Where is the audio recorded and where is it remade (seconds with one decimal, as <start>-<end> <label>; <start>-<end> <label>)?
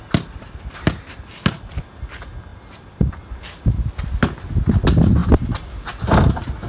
0.0-2.5 recorded; 2.5-3.2 remade; 3.2-5.2 recorded; 5.2-6.7 remade